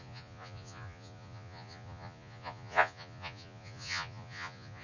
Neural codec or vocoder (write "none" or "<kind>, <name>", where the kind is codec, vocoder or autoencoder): vocoder, Vocos